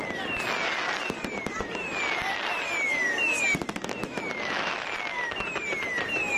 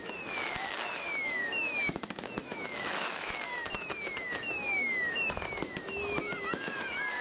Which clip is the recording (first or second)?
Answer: first